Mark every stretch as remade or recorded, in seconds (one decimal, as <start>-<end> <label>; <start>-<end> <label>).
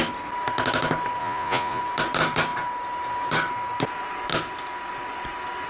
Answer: 0.0-1.2 recorded; 1.2-1.8 remade; 1.8-5.7 recorded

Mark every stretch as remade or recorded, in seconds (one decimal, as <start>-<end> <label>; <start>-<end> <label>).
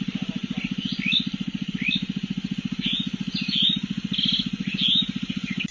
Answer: 0.0-5.7 recorded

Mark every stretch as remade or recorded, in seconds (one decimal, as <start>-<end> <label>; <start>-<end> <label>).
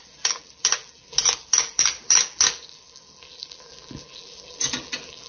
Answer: 0.0-5.3 remade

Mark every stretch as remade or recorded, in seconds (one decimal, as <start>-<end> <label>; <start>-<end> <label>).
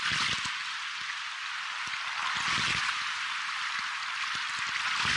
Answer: 0.0-5.2 recorded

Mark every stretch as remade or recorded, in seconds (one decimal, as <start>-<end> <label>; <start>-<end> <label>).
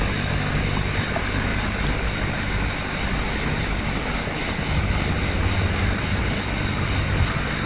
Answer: 0.0-7.7 recorded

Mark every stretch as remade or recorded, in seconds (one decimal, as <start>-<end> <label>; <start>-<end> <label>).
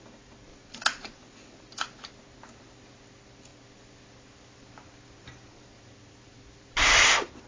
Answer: 0.0-0.5 recorded; 0.5-1.6 remade; 1.6-7.5 recorded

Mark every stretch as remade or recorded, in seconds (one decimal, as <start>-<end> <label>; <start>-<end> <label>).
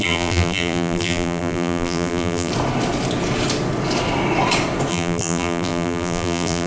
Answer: 0.0-2.5 remade; 2.5-4.9 recorded; 4.9-6.7 remade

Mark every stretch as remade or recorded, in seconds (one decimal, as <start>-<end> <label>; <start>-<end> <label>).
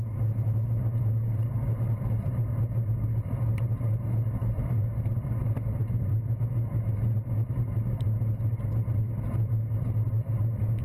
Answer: 0.0-10.8 recorded